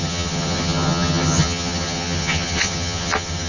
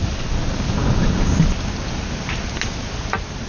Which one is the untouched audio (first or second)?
second